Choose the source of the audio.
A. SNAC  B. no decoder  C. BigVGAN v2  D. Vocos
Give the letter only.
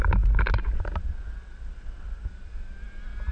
B